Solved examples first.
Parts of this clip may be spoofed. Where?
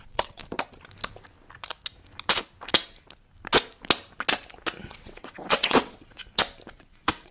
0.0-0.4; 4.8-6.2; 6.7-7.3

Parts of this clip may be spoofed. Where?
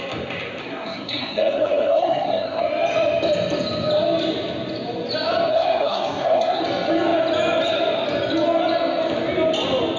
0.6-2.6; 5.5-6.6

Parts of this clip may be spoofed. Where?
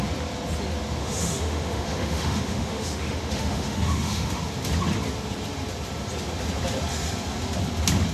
1.0-4.4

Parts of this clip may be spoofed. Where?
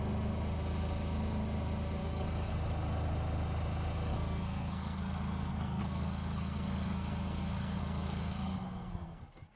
2.0-2.5; 4.1-9.6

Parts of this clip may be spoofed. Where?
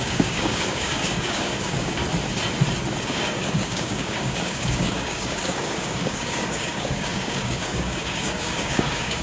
0.0-2.0; 3.0-9.2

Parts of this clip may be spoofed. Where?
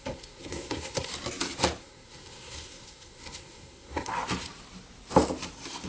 0.0-1.1; 1.8-4.1